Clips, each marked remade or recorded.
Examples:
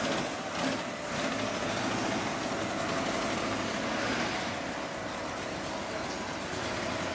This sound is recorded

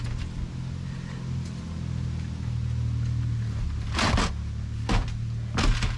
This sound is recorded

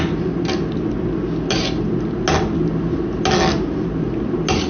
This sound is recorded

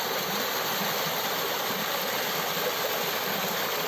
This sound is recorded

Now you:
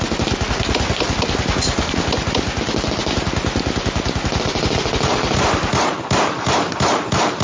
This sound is recorded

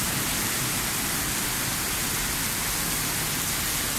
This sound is recorded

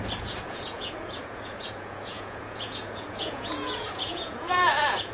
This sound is remade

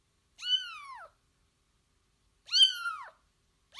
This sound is recorded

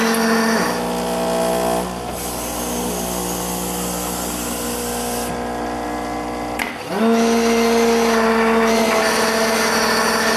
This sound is recorded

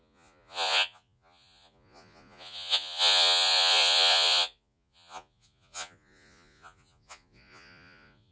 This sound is remade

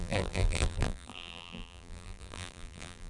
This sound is remade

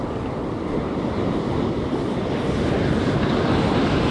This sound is recorded